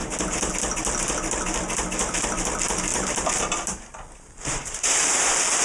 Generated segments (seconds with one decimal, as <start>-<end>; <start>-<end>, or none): 0.0-0.5; 2.9-5.6